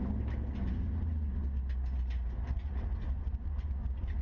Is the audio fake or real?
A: real